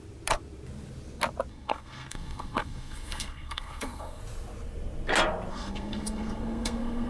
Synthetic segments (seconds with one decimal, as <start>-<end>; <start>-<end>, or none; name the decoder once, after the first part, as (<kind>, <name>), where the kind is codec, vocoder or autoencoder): 1.5-4.2 (codec, SNAC); 5.5-7.1

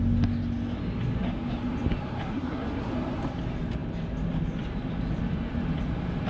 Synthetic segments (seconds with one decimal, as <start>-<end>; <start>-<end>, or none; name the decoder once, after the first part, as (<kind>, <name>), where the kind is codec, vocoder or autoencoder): 2.3-2.9 (codec, SNAC)

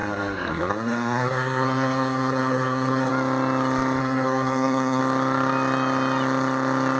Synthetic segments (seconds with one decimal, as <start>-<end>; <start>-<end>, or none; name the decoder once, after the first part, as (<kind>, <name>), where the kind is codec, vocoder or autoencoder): 0.0-3.1 (codec, SNAC); 4.0-5.0

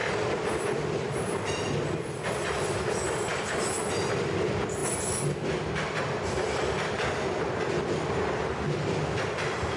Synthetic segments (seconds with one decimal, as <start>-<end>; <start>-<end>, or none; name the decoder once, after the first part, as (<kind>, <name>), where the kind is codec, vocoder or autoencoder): none

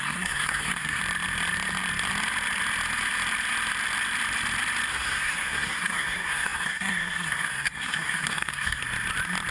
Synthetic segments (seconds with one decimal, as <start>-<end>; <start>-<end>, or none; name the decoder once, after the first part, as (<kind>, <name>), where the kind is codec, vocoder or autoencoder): 0.0-1.0 (codec, SNAC); 4.9-8.8

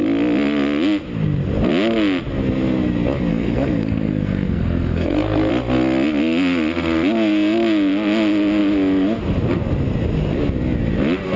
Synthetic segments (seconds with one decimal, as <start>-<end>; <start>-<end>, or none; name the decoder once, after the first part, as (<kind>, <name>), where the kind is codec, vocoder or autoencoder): 3.3-5.5 (codec, SNAC)

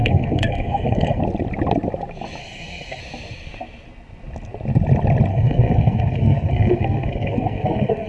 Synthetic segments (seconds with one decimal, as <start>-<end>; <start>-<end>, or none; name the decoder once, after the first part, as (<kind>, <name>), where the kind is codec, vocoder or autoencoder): 0.0-1.2 (codec, SNAC); 2.4-3.0; 5.3-8.1

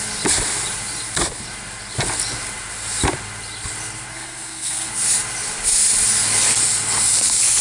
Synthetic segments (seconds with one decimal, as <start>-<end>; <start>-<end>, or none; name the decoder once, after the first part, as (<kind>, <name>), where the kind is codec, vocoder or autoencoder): 4.1-4.9 (codec, SNAC)